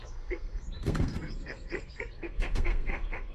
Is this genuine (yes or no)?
no